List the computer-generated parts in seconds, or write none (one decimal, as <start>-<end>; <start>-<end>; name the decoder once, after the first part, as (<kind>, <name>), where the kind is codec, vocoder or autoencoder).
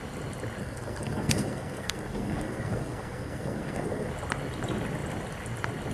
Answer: 0.6-4.1 (codec, SNAC)